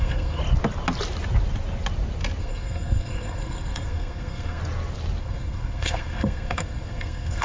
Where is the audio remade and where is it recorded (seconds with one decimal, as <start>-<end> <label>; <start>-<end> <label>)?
0.0-0.4 remade; 0.4-2.4 recorded; 2.4-4.6 remade; 4.6-5.2 recorded; 5.2-7.4 remade

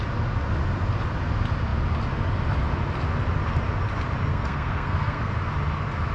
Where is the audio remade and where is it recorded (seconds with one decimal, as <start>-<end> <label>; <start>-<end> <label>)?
0.0-4.3 recorded; 4.3-5.3 remade; 5.3-6.1 recorded

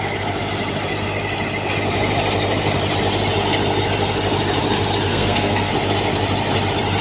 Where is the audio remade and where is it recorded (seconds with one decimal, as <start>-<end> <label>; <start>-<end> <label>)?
0.0-5.1 recorded; 5.1-5.7 remade; 5.7-7.0 recorded